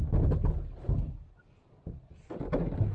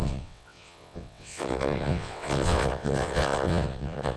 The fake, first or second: second